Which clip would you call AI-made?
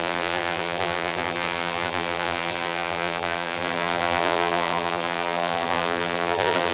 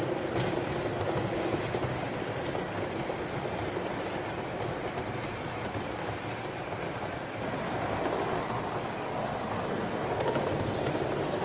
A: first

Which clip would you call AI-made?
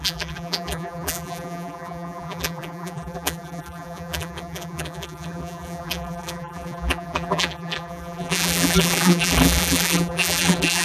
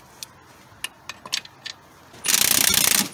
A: first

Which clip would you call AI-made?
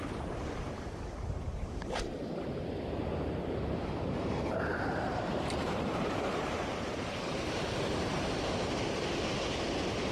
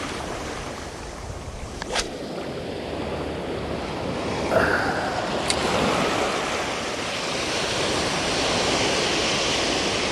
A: first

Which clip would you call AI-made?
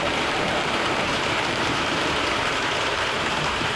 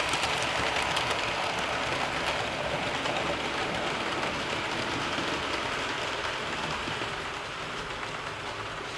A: first